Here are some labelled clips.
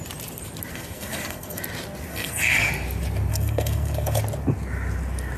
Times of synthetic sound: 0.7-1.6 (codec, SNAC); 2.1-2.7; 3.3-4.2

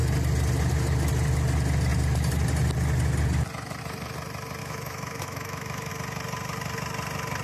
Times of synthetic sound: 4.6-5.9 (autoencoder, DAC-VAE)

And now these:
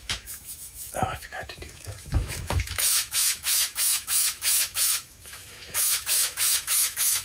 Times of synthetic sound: 0.0-7.2 (autoencoder, DAC-VAE)

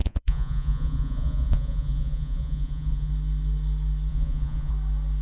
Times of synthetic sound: 0.0-3.1 (vocoder, Vocos); 4.1-4.7